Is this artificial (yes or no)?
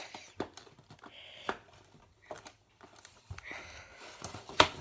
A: no